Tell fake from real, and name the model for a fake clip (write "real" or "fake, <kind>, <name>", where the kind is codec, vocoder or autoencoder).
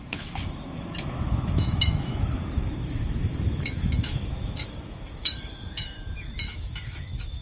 fake, autoencoder, DAC-VAE